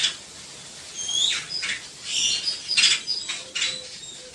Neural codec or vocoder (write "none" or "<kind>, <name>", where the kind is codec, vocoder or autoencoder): none